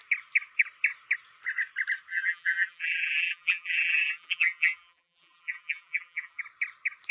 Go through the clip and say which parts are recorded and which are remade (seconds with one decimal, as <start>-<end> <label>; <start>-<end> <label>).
0.0-2.1 recorded; 2.1-6.4 remade; 6.4-7.1 recorded